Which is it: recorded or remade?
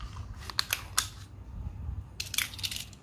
recorded